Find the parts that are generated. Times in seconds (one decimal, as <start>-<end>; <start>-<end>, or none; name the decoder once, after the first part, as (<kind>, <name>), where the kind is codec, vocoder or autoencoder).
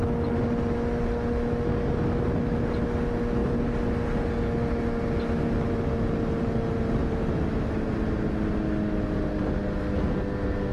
none